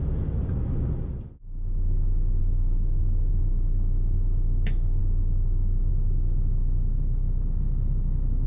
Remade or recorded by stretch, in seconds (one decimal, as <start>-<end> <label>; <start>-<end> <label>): 0.0-2.4 recorded; 2.4-3.3 remade; 3.3-8.5 recorded